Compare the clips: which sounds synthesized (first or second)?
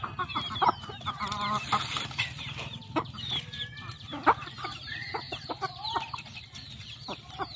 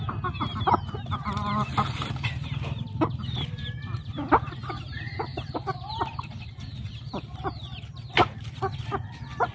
first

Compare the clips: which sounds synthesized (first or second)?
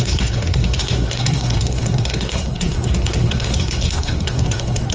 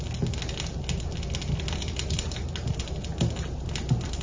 first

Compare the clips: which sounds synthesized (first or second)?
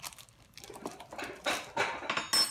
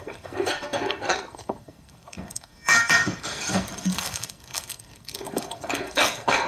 second